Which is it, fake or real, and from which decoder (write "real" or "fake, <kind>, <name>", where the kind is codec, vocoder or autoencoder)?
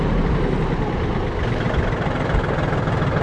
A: real